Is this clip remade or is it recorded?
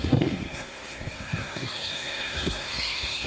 remade